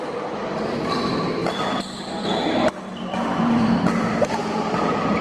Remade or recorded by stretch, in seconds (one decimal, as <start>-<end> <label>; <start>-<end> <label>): 0.0-1.4 remade; 1.4-3.4 recorded; 3.4-5.2 remade